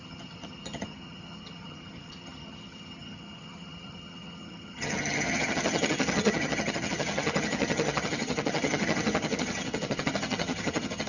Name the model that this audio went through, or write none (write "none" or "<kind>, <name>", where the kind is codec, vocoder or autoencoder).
vocoder, HiFi-GAN